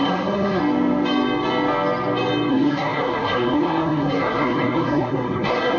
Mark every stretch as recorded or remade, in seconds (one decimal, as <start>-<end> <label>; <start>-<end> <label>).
0.0-0.6 remade; 0.6-2.5 recorded; 2.5-5.8 remade